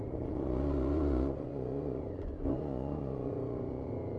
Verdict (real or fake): fake